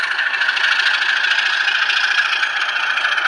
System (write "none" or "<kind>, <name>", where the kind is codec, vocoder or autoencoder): none